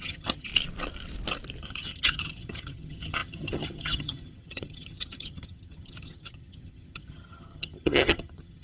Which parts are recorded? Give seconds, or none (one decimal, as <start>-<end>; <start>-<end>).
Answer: 0.5-1.6